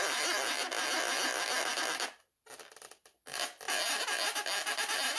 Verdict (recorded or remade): recorded